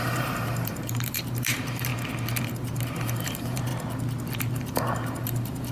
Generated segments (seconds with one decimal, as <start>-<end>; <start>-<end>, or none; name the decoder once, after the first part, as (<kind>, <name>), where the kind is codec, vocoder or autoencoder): 0.0-1.9 (vocoder, BigVGAN v2); 2.4-3.7; 4.5-5.7